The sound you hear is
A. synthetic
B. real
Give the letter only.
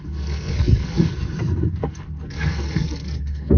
A